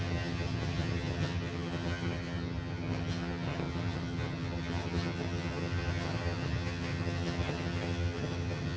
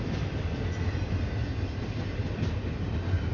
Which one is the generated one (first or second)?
first